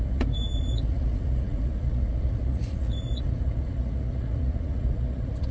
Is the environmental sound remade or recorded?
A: remade